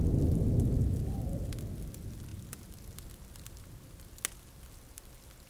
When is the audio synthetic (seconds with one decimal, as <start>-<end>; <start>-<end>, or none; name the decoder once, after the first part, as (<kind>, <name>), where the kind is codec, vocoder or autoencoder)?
none

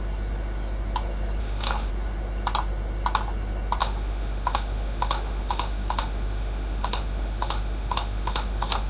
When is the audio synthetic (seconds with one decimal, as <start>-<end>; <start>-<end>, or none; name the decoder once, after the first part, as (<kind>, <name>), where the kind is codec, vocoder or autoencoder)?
1.4-1.9 (autoencoder, DAC-VAE); 3.8-8.9

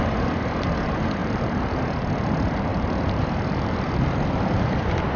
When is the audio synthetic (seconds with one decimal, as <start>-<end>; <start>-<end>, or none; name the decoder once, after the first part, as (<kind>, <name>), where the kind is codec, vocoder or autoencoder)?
1.2-1.8 (vocoder, BigVGAN v2); 2.7-4.3

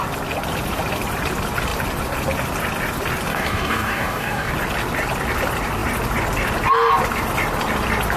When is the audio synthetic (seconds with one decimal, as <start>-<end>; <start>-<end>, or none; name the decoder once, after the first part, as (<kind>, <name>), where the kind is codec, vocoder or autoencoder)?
3.3-4.5 (codec, DAC)

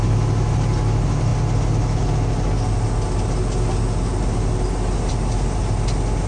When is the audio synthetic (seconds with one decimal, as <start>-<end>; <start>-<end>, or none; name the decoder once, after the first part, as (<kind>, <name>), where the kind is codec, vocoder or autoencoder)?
none